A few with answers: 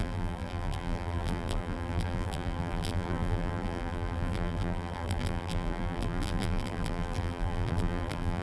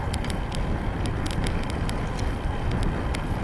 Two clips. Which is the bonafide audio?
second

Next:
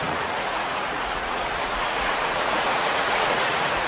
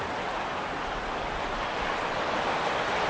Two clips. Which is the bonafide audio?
second